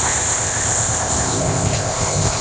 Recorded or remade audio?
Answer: remade